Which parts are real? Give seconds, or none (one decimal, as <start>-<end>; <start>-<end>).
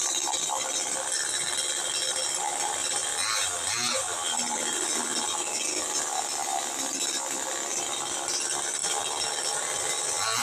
0.0-10.4